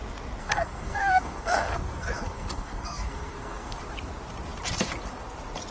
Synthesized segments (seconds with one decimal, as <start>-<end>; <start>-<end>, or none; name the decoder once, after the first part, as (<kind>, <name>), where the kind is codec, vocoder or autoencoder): 0.4-3.8 (codec, SNAC)